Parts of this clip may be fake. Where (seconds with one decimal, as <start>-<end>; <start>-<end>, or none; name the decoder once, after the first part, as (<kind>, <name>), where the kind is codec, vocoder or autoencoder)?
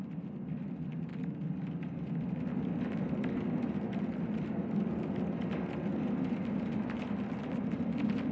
none